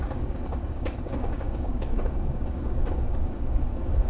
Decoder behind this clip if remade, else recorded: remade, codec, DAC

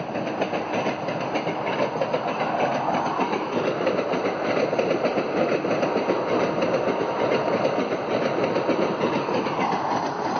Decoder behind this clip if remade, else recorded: recorded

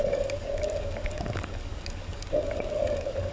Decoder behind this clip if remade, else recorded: remade, codec, DAC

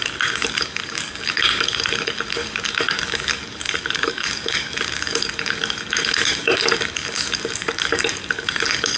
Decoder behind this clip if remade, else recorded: remade, codec, DAC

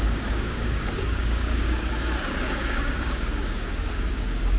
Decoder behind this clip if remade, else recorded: remade, codec, DAC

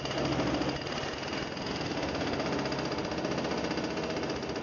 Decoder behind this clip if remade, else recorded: recorded